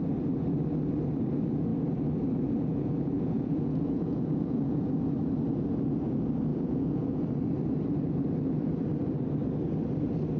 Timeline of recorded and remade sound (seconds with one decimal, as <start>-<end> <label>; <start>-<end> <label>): 0.0-2.7 recorded; 2.7-4.9 remade; 4.9-6.5 recorded; 6.5-7.2 remade; 7.2-10.4 recorded